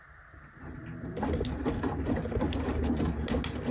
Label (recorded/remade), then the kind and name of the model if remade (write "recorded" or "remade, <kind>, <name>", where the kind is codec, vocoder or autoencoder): recorded